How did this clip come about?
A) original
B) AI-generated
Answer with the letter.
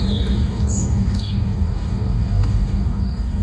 B